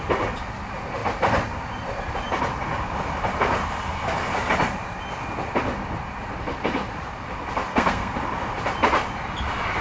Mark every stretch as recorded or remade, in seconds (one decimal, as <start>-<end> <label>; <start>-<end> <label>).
0.0-7.7 recorded; 7.7-8.2 remade; 8.2-9.8 recorded